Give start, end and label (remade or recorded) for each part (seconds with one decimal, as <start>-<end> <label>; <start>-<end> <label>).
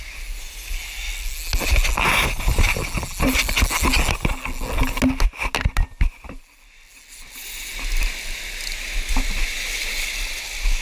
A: 0.0-10.8 recorded